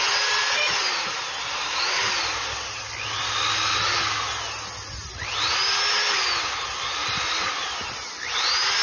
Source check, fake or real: real